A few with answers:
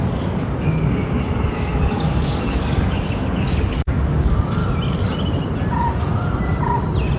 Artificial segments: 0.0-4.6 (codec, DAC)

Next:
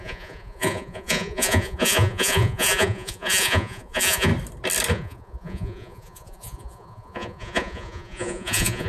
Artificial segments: 0.0-4.3 (vocoder, Vocos); 4.9-8.9

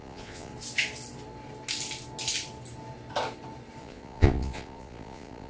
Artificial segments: 0.0-0.5 (vocoder, Vocos); 3.8-5.5

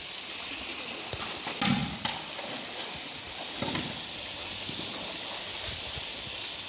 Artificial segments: none

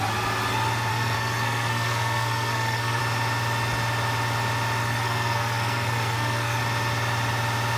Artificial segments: 0.9-3.0 (codec, SNAC); 4.8-6.6

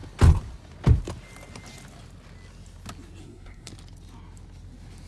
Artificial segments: 3.2-3.7 (codec, SNAC)

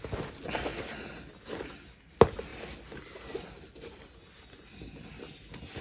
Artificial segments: none